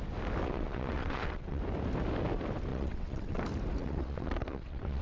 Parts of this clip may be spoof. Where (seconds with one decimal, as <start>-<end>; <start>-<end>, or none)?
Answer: 0.4-1.6; 2.7-3.4; 3.8-5.0